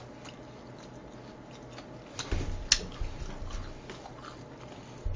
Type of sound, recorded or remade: recorded